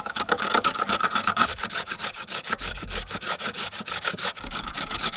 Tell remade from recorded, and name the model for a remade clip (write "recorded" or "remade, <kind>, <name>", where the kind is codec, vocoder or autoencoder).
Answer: remade, codec, DAC